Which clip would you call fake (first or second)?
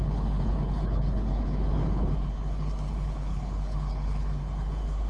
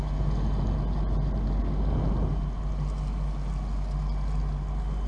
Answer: first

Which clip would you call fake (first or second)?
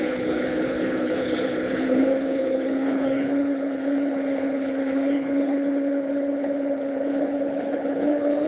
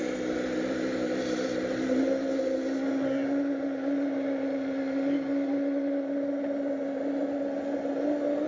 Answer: first